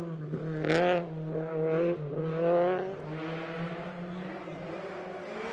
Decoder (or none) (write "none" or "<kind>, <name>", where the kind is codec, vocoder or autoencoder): none